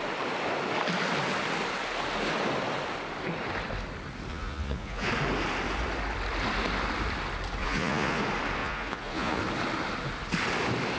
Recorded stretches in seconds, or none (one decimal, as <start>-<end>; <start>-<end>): 0.0-4.3; 5.1-7.6; 8.2-8.6; 9.4-11.0